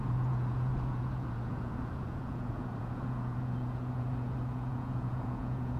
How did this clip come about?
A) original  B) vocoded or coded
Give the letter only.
B